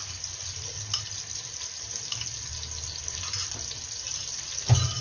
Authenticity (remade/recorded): recorded